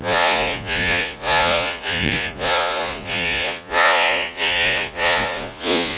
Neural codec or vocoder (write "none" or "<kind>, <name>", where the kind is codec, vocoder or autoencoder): vocoder, Vocos